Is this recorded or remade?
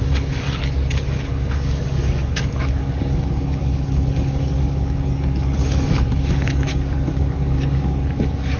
remade